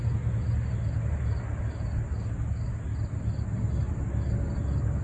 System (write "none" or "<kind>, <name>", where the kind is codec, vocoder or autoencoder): none